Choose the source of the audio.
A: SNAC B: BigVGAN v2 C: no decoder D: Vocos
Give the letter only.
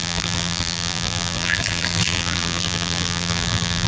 B